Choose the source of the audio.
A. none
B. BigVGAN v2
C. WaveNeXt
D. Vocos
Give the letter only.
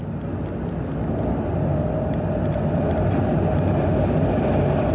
A